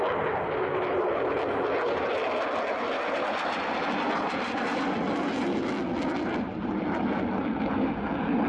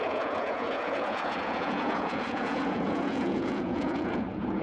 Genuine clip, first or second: first